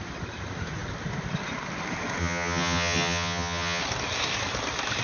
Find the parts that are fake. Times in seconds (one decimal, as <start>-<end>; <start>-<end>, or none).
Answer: 2.2-3.8